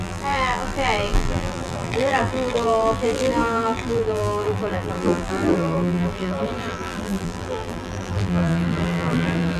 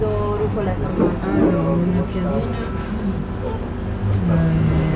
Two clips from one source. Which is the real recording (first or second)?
second